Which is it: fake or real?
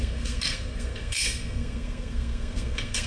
fake